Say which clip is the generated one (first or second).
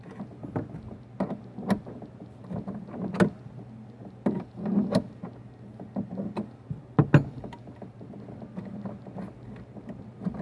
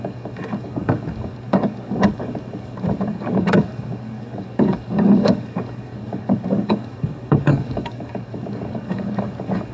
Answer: second